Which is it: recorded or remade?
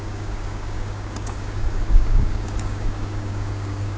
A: remade